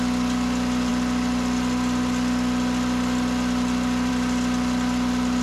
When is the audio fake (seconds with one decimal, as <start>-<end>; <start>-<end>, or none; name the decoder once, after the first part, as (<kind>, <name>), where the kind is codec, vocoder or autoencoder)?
none